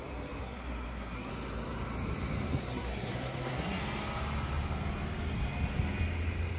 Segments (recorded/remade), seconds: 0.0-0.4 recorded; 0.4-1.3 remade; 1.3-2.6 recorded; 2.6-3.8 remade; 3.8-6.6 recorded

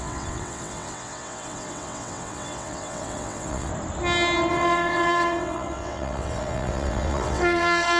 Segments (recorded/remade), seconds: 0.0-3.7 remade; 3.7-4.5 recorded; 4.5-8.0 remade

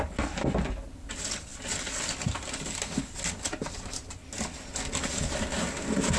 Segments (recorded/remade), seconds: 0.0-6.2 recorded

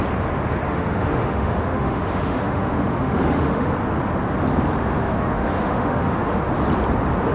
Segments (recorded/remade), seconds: 0.0-0.7 recorded; 0.7-3.7 remade; 3.7-4.8 recorded; 4.8-6.5 remade; 6.5-7.3 recorded